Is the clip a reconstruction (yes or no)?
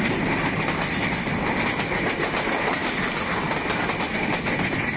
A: no